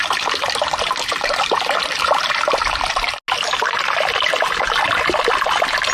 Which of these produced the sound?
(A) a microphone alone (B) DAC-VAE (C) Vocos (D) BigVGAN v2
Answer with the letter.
A